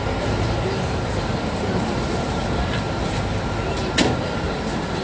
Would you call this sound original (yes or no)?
no